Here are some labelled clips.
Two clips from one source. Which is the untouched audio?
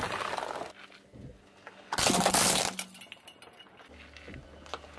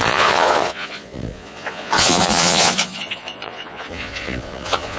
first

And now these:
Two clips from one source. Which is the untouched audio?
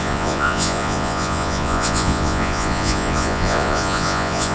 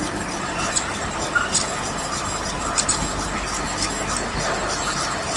second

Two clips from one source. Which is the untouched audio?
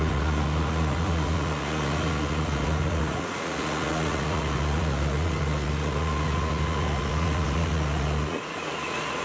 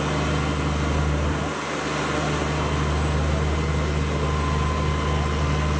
second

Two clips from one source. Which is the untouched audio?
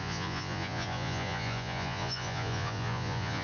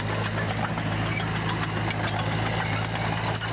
second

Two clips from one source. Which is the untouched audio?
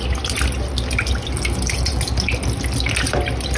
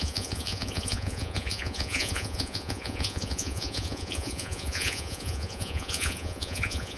first